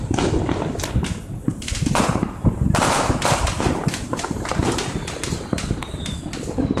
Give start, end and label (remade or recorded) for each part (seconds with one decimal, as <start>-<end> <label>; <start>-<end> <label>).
0.0-1.5 recorded; 1.5-5.6 remade; 5.6-6.8 recorded